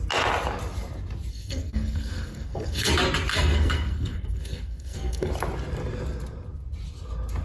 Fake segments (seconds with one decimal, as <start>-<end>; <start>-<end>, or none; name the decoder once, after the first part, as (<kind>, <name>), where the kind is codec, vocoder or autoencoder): 1.3-2.9 (codec, SNAC); 3.3-5.3